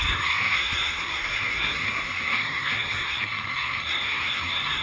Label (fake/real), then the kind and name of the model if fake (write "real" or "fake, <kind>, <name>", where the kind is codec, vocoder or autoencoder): fake, codec, SNAC